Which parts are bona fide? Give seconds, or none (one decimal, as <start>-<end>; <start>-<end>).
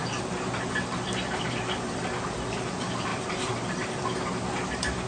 0.0-3.1; 4.0-5.1